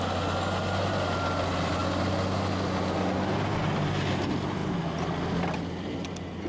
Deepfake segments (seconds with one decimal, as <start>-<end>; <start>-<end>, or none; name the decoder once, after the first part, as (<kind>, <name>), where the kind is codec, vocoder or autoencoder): none